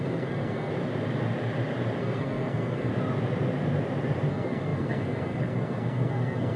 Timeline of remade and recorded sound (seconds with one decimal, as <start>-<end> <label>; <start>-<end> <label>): 0.0-0.7 remade; 0.7-2.0 recorded; 2.0-2.9 remade; 2.9-4.3 recorded; 4.3-6.6 remade